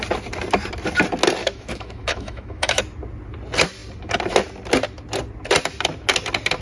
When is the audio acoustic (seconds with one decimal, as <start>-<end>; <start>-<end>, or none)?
0.0-1.4; 2.8-6.6